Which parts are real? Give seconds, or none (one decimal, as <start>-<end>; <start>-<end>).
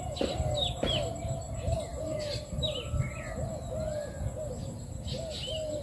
0.0-5.8